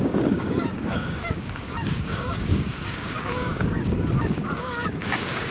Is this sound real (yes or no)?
no